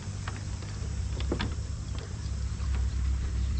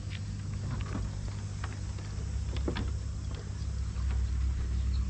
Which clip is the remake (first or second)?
first